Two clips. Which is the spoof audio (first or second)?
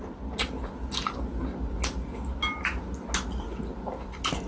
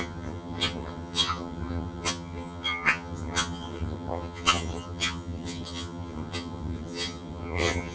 second